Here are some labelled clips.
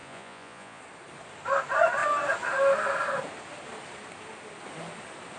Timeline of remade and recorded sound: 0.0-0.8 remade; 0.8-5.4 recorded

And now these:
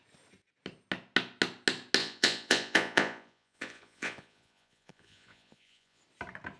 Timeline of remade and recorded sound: 0.0-2.0 recorded; 2.0-6.0 remade; 6.0-6.6 recorded

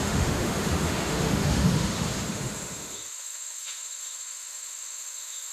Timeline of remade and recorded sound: 0.0-5.5 remade

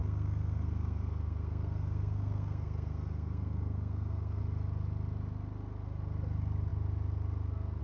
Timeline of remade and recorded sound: 0.0-4.4 remade; 4.4-7.8 recorded